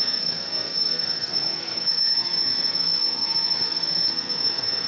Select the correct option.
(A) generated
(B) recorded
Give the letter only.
A